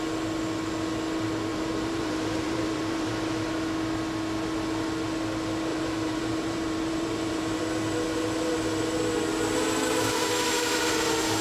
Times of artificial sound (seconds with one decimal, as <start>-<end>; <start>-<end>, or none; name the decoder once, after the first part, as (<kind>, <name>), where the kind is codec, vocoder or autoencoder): 1.5-3.1 (vocoder, BigVGAN v2); 5.7-7.6